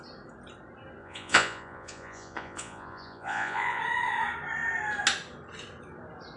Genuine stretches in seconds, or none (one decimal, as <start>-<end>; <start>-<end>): 0.0-1.0; 3.8-6.4